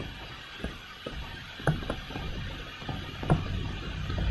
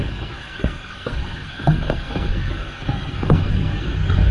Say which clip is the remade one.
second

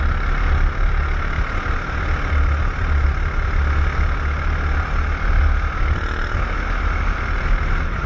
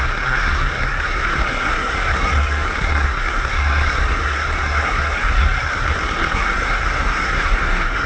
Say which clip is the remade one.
second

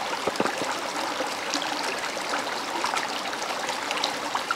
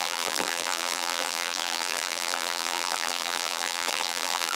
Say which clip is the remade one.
second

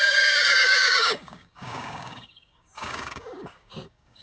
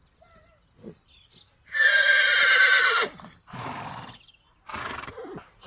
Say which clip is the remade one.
first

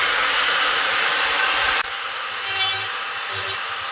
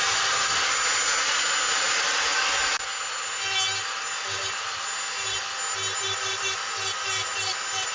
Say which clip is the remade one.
first